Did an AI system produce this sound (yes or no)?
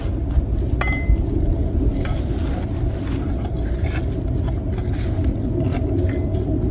no